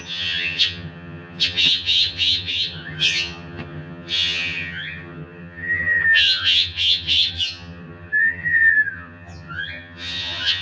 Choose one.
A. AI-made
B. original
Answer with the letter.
A